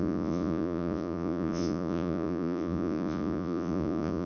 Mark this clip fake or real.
fake